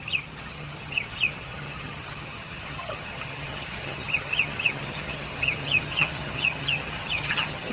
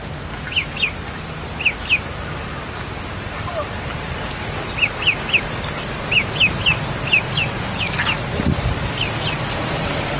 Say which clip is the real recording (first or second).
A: second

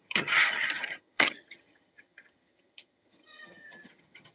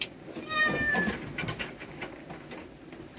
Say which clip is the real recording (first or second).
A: second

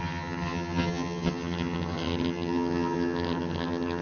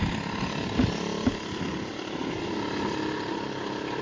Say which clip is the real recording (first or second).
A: second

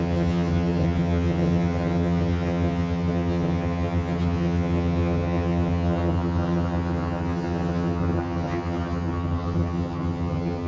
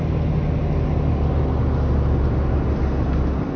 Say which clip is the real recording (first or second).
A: second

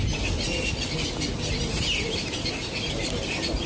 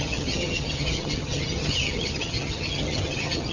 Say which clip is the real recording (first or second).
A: first